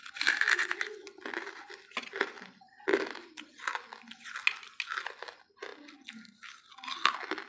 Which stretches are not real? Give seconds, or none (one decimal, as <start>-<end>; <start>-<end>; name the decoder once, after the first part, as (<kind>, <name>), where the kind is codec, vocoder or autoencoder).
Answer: none